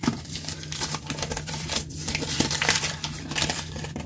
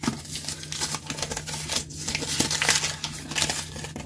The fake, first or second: first